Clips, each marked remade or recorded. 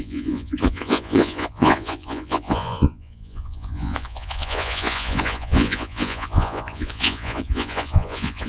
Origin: remade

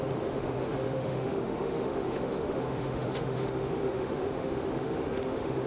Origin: remade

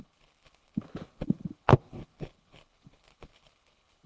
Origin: remade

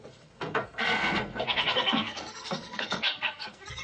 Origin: remade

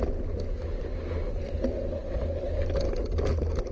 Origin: recorded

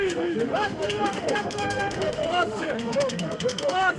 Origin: remade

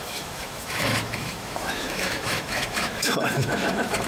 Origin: remade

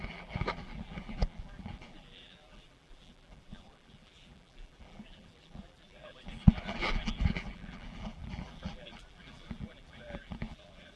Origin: remade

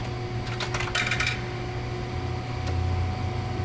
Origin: recorded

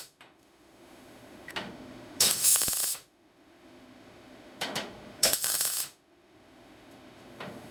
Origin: remade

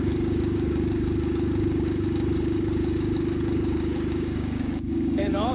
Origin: remade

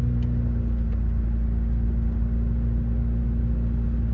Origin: recorded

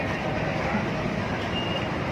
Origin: recorded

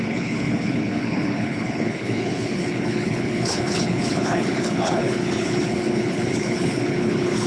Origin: remade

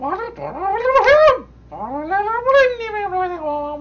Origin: recorded